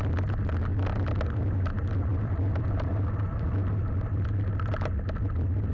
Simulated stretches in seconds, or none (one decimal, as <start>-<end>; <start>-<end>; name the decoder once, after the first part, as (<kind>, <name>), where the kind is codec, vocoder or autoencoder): 0.7-4.1 (vocoder, BigVGAN v2)